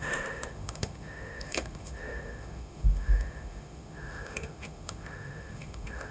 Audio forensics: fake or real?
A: fake